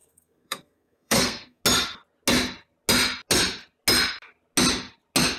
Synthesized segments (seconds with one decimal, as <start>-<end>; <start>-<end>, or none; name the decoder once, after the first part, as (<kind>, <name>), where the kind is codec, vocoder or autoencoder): 0.0-1.6 (codec, SNAC)